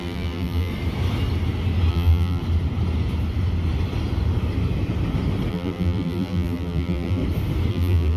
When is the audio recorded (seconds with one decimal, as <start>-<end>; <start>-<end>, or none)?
0.7-1.9; 2.4-5.5; 7.2-7.7